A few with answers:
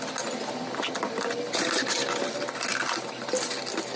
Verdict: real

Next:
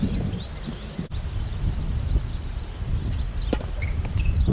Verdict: real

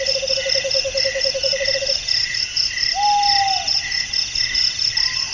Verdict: real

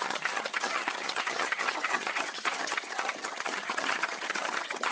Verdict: fake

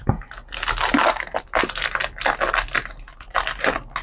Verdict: real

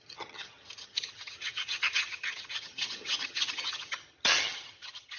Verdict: fake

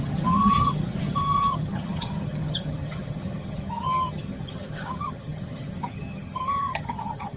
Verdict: fake